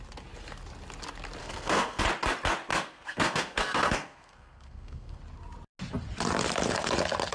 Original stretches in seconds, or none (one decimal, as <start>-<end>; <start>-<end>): 0.0-1.4; 2.0-2.7; 5.2-7.3